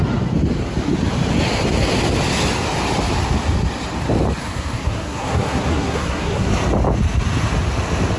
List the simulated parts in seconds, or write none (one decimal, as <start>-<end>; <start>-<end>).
4.4-6.5